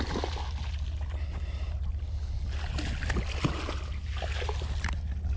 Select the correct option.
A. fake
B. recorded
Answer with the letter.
B